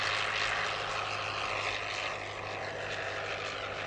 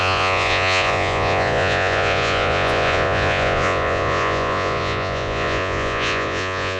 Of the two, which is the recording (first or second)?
first